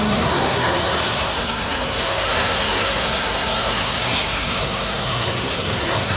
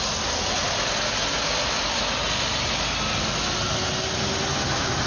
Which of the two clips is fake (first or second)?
first